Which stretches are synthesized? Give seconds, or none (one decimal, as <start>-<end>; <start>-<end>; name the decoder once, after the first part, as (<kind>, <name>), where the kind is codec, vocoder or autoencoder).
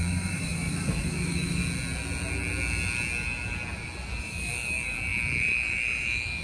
0.0-1.6 (autoencoder, DAC-VAE); 4.2-6.4